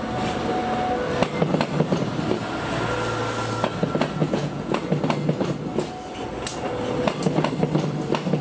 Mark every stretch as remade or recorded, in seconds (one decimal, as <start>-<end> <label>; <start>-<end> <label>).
0.0-4.2 recorded; 4.2-4.8 remade; 4.8-8.4 recorded